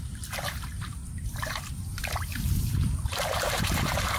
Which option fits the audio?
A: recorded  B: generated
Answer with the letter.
B